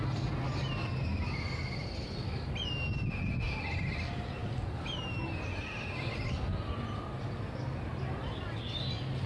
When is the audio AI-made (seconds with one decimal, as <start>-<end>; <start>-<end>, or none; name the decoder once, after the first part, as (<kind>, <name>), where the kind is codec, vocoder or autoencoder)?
none